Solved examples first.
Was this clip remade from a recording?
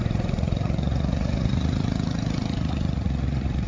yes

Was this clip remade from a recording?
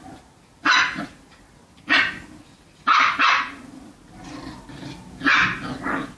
no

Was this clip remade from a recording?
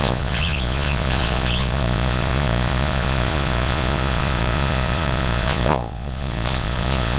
yes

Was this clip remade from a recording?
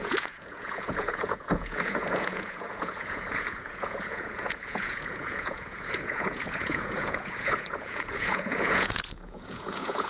yes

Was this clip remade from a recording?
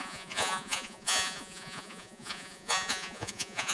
yes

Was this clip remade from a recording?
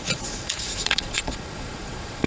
yes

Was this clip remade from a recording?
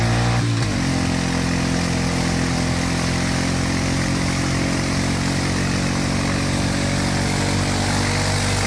no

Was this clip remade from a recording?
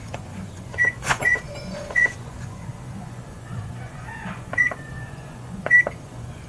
yes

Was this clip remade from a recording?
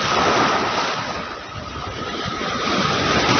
no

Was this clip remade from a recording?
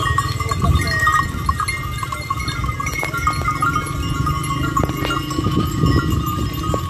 no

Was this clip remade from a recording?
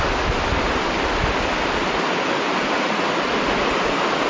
no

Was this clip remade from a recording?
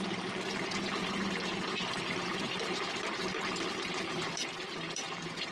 no